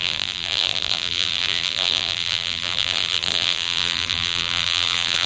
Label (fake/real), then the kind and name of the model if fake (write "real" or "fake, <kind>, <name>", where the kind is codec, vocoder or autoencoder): fake, vocoder, BigVGAN v2